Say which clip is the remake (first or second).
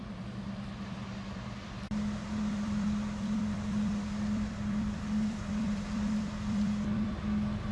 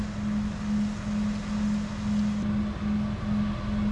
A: first